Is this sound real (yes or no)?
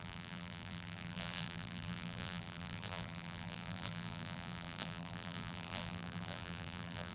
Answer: no